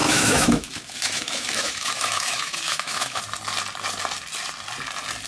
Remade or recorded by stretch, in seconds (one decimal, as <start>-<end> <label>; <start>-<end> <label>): 0.0-3.2 remade; 3.2-5.3 recorded

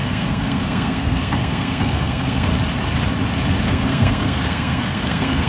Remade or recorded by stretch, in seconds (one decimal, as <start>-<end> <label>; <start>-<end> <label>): 0.0-2.5 remade; 2.5-3.6 recorded; 3.6-5.5 remade

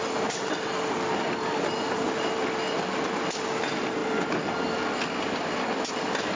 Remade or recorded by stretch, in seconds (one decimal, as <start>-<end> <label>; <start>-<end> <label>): 0.0-6.4 recorded

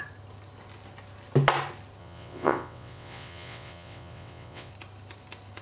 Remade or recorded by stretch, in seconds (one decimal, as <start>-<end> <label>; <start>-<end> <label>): 0.0-2.0 recorded; 2.0-4.7 remade; 4.7-5.6 recorded

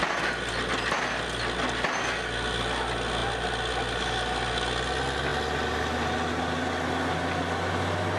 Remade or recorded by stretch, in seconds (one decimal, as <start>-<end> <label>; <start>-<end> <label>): 0.0-8.2 recorded

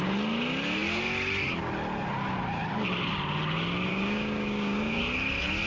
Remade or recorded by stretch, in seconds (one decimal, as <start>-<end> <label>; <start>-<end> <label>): 0.0-3.9 recorded; 3.9-5.0 remade; 5.0-5.7 recorded